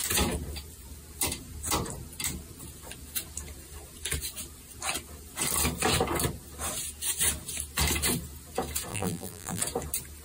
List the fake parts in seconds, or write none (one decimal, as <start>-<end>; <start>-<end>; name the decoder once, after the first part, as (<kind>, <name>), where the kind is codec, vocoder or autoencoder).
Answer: 8.9-9.6 (vocoder, BigVGAN v2)